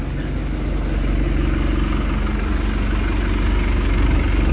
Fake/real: real